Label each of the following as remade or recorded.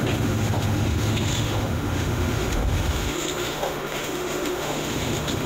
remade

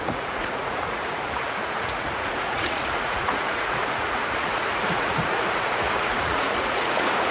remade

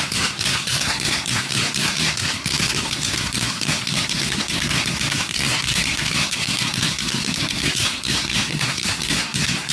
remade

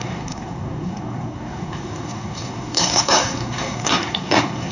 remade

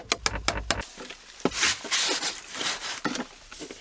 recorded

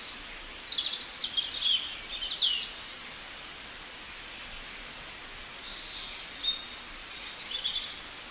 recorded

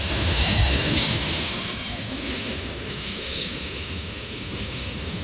remade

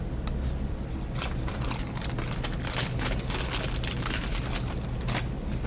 recorded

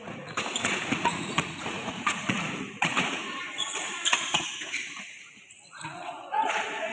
remade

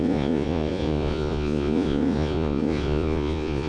remade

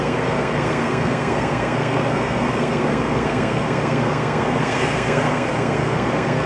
remade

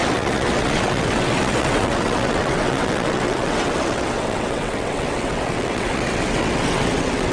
remade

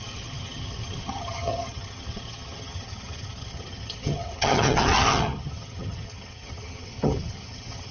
remade